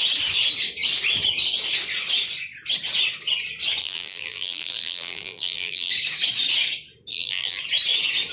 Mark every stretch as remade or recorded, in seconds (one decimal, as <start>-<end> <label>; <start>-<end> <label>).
0.0-3.8 recorded; 3.8-5.9 remade; 5.9-7.1 recorded; 7.1-7.6 remade; 7.6-8.3 recorded